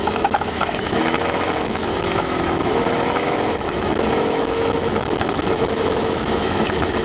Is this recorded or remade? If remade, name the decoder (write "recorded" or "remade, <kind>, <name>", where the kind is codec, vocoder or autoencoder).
remade, autoencoder, DAC-VAE